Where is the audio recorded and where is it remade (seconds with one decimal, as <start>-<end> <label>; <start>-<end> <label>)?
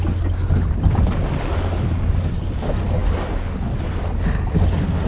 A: 0.0-5.1 recorded